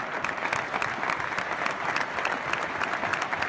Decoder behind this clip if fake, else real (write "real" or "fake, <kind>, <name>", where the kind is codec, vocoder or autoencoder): real